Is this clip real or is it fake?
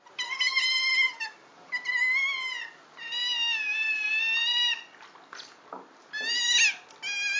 real